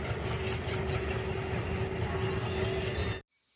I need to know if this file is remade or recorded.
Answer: recorded